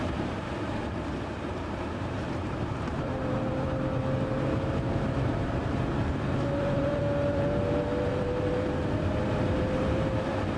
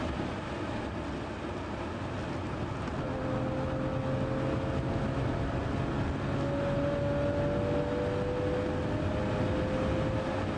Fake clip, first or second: first